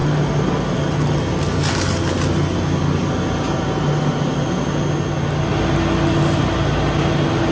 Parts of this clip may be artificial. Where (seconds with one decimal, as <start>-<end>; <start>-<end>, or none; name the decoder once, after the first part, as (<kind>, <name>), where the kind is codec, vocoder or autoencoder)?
none